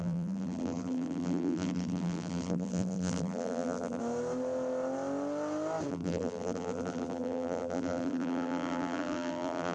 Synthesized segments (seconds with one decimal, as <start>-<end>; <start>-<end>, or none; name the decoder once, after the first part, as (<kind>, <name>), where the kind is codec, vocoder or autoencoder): 0.0-4.0 (vocoder, BigVGAN v2); 5.9-9.7